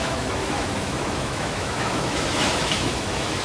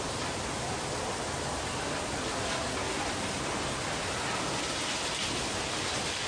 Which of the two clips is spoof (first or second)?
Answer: first